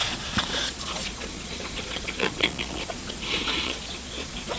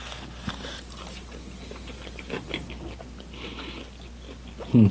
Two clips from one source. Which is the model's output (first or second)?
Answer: first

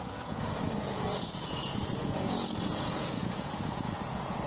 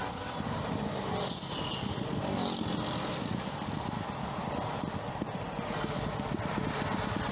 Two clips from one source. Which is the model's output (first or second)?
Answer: first